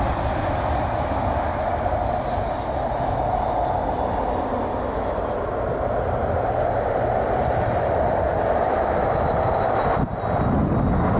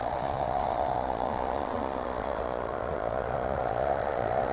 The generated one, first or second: second